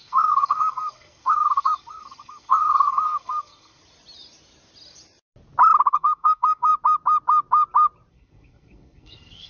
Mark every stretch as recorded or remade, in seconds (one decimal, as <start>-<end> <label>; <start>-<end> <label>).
0.0-3.8 remade; 3.8-5.9 recorded; 5.9-6.7 remade; 6.7-8.1 recorded; 8.1-9.5 remade